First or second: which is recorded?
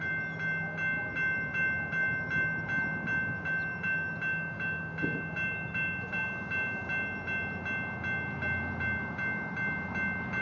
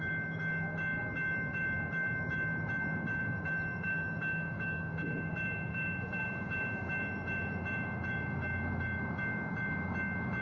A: first